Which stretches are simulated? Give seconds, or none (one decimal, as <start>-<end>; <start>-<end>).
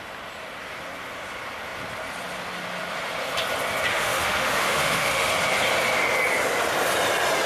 3.9-5.3